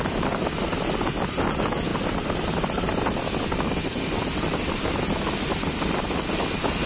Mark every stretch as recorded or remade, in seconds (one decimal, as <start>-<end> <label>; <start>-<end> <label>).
0.0-6.9 recorded